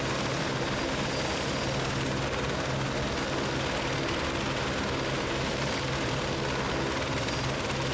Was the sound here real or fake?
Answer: real